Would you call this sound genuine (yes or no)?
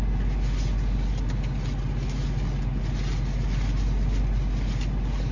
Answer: yes